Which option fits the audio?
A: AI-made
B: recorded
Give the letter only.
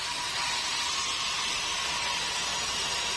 B